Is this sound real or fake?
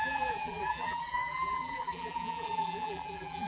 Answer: fake